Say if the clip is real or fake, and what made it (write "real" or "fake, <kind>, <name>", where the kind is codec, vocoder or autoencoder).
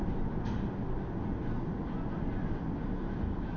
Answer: real